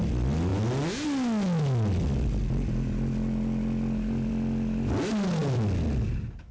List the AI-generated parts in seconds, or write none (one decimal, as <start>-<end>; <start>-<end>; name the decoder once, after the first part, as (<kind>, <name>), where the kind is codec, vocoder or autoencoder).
none